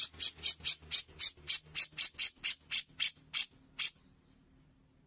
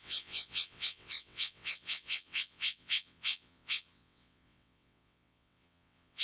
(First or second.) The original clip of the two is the first